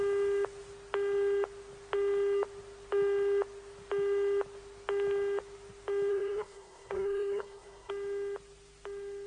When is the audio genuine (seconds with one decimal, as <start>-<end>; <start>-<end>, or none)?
0.0-6.1; 7.9-9.3